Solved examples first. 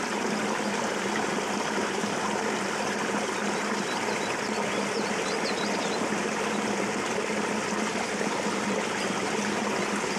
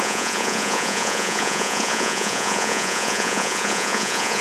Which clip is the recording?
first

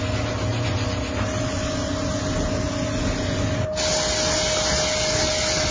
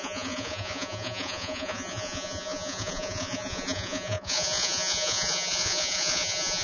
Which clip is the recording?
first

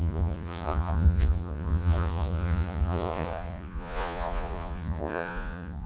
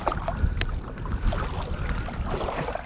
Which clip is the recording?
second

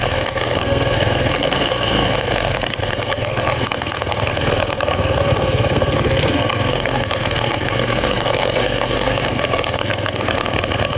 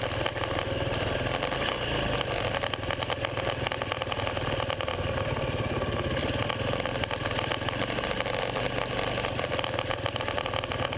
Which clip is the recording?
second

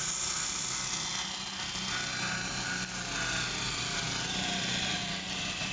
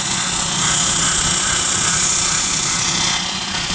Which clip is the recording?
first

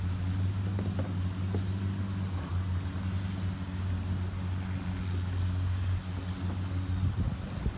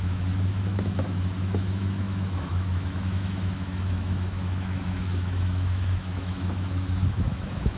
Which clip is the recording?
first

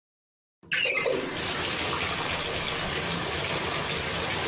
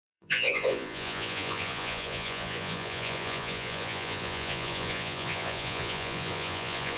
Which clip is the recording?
first